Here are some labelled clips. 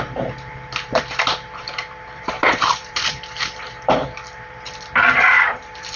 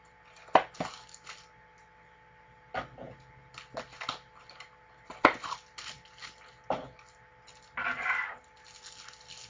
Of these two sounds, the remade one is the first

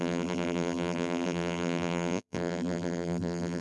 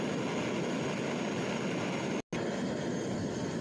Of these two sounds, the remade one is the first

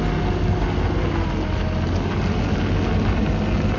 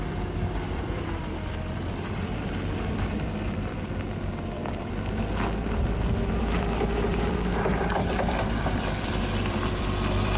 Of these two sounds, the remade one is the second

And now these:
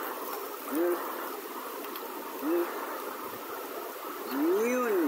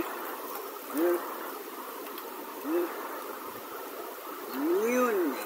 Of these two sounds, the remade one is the second